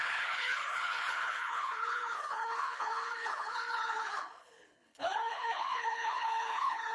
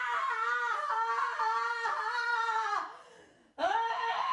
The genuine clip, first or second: second